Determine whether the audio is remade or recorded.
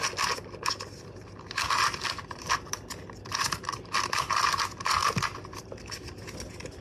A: recorded